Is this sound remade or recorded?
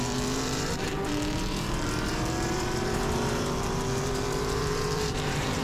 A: remade